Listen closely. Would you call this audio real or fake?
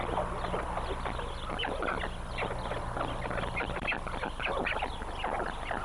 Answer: real